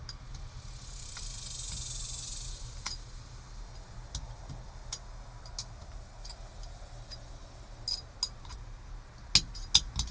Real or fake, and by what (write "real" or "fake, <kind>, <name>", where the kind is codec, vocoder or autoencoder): real